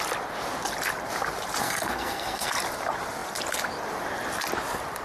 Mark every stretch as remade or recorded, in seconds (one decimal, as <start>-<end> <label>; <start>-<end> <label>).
0.0-1.6 recorded; 1.6-2.5 remade; 2.5-5.0 recorded